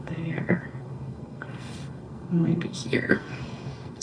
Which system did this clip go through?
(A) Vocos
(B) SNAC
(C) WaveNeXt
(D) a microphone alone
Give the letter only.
B